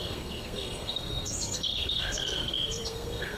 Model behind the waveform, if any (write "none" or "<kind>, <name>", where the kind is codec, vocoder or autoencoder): codec, SNAC